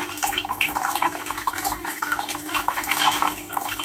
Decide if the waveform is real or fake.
fake